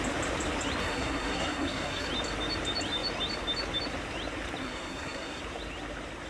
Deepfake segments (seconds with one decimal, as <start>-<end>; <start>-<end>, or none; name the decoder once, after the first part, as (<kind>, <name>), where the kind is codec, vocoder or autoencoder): 0.8-2.1 (codec, SNAC); 4.6-5.4